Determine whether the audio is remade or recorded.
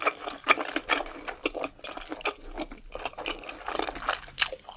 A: recorded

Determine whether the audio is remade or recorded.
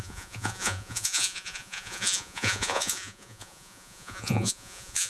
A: remade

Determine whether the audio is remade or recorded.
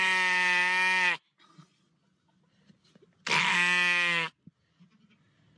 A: recorded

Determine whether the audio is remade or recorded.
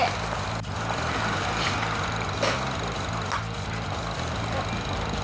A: recorded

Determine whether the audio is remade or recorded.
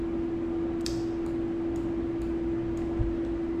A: recorded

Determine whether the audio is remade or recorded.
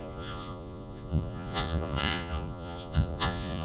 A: remade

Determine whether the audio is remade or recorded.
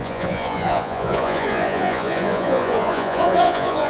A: remade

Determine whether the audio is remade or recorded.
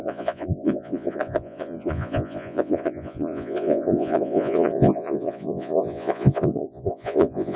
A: remade